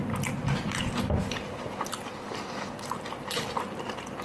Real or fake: real